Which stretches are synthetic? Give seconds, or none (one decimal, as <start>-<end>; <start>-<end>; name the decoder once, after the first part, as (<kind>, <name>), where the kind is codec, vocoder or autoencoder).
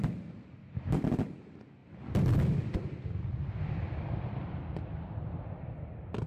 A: none